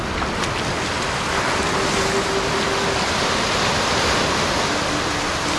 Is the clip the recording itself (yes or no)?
yes